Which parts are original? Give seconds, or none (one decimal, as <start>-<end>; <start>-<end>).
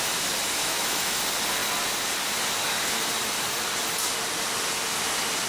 0.0-0.6; 1.2-5.5